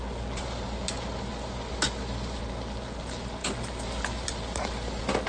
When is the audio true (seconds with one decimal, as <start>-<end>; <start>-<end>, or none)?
0.0-5.3